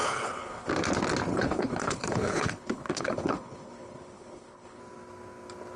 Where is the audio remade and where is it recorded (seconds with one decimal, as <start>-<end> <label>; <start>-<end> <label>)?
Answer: 0.0-0.7 remade; 0.7-1.3 recorded; 1.3-4.8 remade; 4.8-5.8 recorded